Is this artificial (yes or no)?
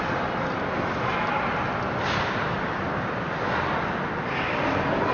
no